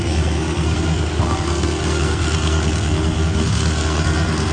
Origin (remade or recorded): remade